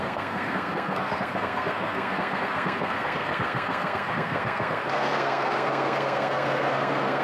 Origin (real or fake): fake